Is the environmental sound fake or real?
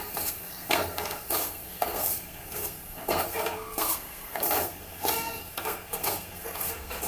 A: fake